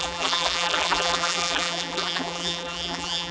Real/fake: fake